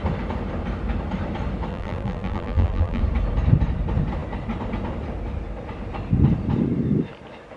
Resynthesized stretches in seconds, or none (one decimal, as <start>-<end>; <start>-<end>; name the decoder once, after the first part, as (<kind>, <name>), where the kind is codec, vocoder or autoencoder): 1.7-3.0 (vocoder, BigVGAN v2)